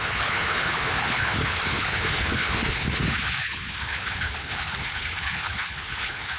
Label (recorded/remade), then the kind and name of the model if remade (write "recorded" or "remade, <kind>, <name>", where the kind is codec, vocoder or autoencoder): remade, codec, HILCodec